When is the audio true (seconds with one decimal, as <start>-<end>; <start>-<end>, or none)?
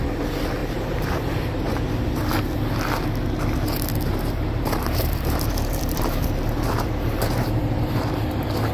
0.0-0.6; 2.1-4.1